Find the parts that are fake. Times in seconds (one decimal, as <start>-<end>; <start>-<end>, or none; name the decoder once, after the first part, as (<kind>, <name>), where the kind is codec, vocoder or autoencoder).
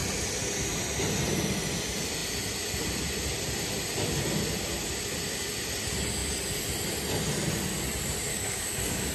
8.3-9.1 (codec, DAC)